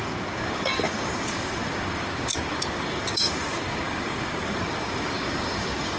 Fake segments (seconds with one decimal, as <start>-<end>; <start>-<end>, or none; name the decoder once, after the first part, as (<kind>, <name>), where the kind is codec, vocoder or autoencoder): 0.0-6.0 (codec, DAC)